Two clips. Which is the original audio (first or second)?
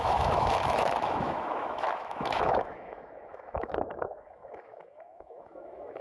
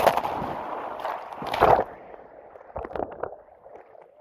second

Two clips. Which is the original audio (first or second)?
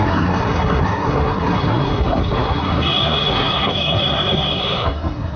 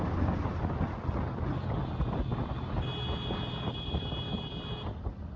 second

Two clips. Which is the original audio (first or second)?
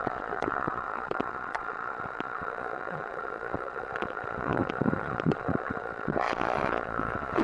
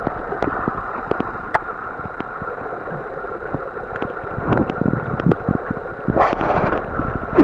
second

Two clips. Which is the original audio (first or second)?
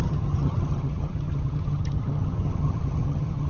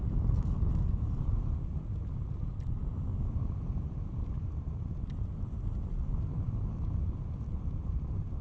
second